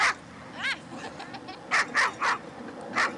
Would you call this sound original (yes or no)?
yes